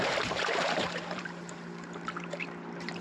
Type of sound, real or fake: fake